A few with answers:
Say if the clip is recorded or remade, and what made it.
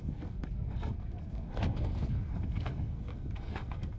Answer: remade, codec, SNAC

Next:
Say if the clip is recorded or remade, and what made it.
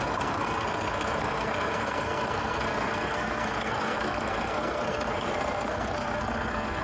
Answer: remade, codec, SNAC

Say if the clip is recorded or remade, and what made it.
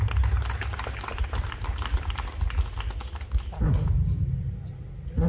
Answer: recorded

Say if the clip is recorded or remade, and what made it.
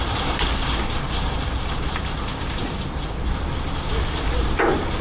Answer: recorded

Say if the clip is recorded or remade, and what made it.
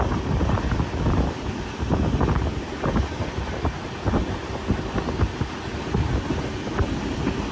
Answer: recorded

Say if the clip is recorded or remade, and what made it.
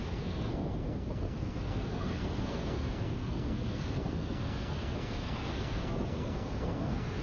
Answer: remade, codec, SNAC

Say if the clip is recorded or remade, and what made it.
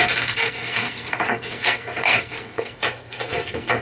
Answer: remade, codec, SNAC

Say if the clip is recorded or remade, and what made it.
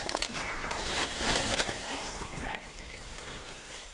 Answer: remade, codec, SNAC